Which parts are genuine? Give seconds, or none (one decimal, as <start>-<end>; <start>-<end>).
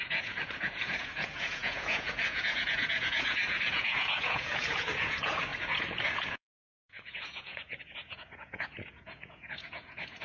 none